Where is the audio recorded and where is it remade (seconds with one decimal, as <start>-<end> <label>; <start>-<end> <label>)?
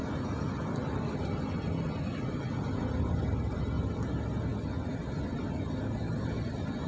0.0-6.9 recorded